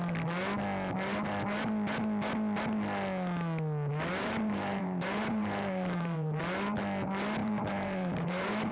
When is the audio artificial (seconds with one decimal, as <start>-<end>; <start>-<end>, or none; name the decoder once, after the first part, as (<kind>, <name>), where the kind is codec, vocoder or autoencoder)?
4.2-6.4 (vocoder, BigVGAN v2); 7.4-8.7